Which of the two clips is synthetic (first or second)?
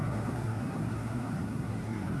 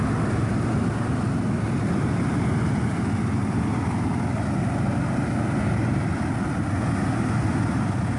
first